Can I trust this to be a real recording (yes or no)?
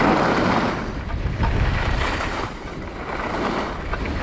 yes